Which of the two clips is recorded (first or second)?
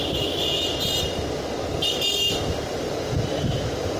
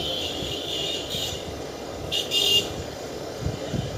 first